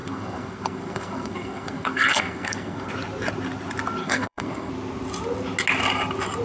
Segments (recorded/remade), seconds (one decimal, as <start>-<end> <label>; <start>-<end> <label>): 0.0-2.9 remade; 2.9-4.0 recorded; 4.0-4.7 remade; 4.7-6.4 recorded